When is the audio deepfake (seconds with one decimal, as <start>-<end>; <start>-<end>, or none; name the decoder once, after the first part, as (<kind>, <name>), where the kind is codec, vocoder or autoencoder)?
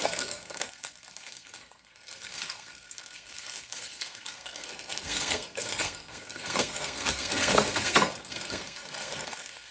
0.0-9.7 (codec, SNAC)